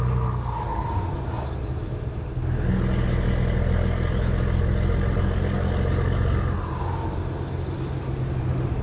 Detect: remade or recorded recorded